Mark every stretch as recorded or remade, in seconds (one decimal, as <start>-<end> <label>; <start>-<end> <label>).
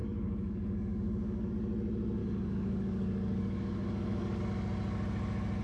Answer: 0.0-1.5 remade; 1.5-2.2 recorded; 2.2-4.4 remade; 4.4-5.6 recorded